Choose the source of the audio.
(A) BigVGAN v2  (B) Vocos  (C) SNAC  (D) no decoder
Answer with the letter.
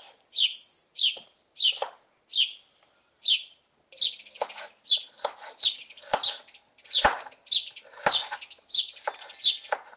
D